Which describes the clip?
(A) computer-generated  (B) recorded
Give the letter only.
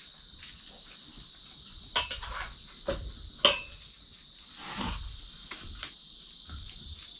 B